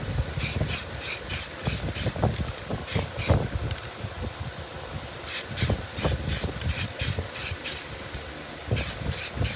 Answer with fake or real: real